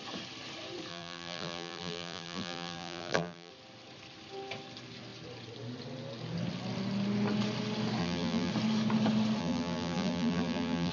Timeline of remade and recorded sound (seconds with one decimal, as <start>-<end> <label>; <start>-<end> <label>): 0.0-0.9 recorded; 0.9-3.5 remade; 3.5-8.0 recorded; 8.0-8.5 remade; 8.5-9.4 recorded; 9.4-10.9 remade